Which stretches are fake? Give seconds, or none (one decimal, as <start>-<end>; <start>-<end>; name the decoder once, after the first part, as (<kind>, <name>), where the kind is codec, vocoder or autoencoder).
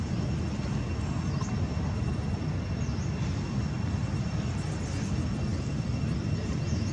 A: none